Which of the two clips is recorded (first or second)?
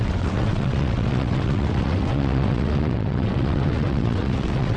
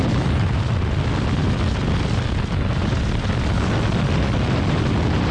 second